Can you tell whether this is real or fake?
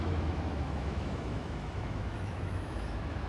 fake